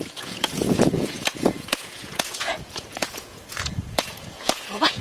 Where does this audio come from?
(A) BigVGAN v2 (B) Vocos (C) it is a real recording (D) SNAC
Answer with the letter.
B